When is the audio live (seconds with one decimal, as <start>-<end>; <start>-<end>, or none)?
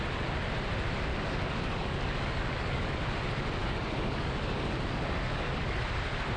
0.0-1.1; 2.9-3.6; 5.8-6.4